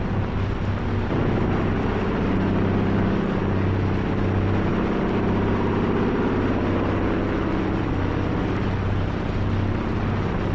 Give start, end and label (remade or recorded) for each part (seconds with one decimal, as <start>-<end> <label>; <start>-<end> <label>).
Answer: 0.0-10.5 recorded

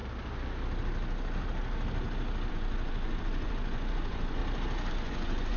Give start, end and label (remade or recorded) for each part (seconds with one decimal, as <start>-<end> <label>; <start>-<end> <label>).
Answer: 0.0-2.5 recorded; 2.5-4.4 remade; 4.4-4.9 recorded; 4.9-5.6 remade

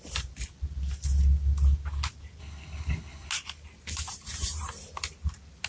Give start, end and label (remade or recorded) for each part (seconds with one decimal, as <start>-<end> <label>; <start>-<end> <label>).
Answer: 0.0-2.4 recorded; 2.4-3.3 remade; 3.3-5.7 recorded

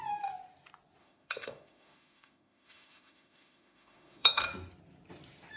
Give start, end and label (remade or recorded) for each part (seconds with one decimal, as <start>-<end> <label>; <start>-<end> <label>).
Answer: 0.0-1.0 recorded; 1.0-4.4 remade; 4.4-5.6 recorded

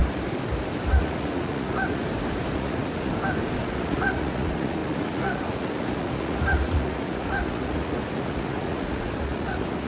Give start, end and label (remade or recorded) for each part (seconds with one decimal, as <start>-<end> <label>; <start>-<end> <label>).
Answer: 0.0-1.0 recorded; 1.0-2.0 remade; 2.0-2.5 recorded; 2.5-3.1 remade; 3.1-3.6 recorded; 3.6-9.9 remade

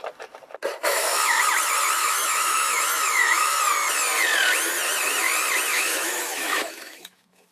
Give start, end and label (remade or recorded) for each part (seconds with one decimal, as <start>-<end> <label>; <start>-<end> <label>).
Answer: 0.0-0.8 recorded; 0.8-1.4 remade; 1.4-2.0 recorded; 2.0-3.6 remade; 3.6-5.7 recorded; 5.7-7.5 remade